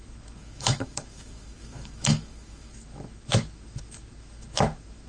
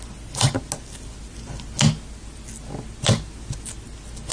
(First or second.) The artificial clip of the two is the first